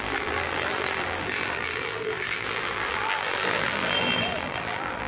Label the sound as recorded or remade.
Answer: remade